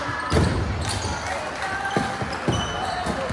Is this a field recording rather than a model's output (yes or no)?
yes